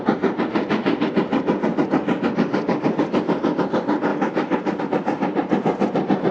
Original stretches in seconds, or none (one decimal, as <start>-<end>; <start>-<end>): 0.0-0.5; 1.8-6.3